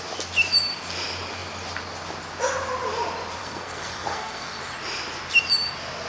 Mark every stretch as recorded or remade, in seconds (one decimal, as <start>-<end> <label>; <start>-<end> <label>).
0.0-3.4 recorded; 3.4-4.6 remade; 4.6-6.1 recorded